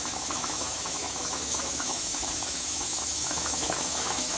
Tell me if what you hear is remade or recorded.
remade